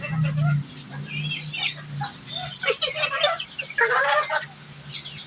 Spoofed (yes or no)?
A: no